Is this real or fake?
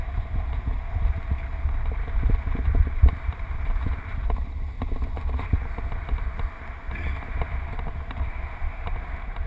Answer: real